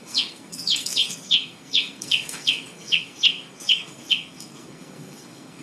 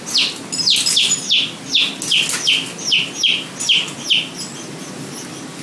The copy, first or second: first